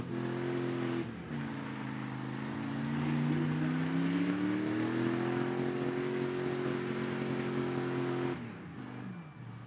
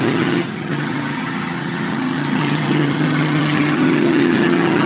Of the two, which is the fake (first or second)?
second